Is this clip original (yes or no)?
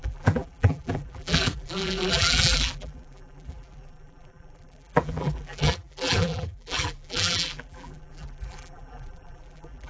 no